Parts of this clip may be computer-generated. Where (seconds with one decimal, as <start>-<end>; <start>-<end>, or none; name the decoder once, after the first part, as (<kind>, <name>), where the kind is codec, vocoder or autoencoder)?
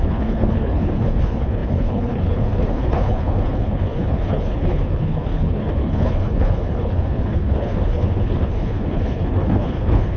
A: 0.0-10.2 (codec, HILCodec)